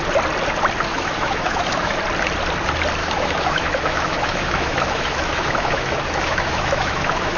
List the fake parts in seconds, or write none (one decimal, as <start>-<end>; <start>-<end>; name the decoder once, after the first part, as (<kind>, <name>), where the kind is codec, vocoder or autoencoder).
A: 0.9-2.0 (autoencoder, DAC-VAE); 3.0-7.4